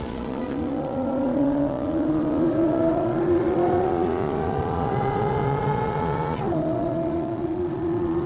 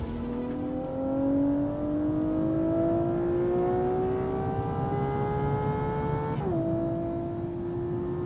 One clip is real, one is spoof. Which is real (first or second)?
second